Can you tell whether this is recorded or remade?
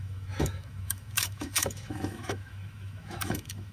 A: remade